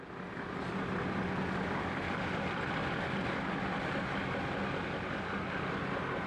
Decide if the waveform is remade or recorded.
recorded